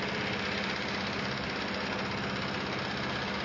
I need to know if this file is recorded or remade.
recorded